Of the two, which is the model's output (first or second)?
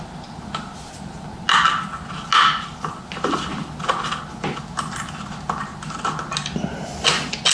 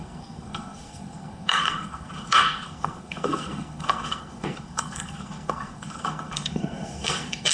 second